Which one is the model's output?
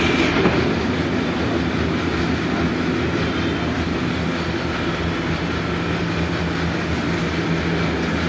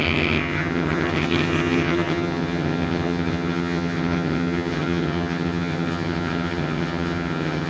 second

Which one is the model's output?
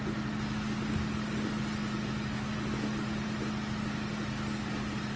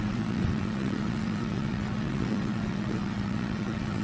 second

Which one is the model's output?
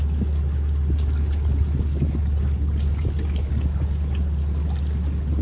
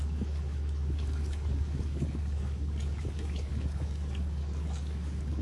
second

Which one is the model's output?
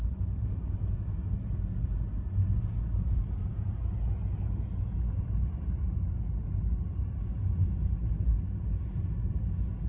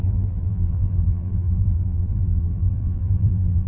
second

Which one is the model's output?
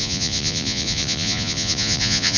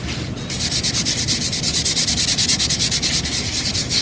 first